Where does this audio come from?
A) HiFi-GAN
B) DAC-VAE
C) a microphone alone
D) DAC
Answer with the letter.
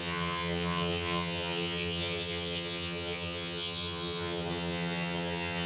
A